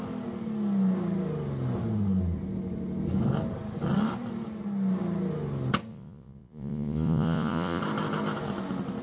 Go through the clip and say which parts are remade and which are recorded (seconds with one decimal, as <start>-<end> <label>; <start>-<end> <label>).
0.0-5.9 recorded; 5.9-7.8 remade; 7.8-9.0 recorded